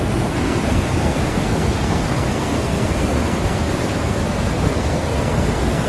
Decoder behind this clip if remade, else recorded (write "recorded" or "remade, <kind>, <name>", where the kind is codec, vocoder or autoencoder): remade, codec, SNAC